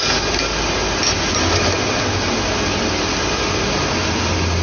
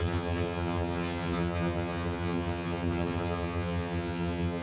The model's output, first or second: second